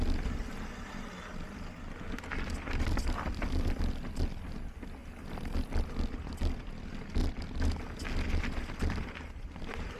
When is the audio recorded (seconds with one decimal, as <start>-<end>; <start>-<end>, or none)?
0.0-10.0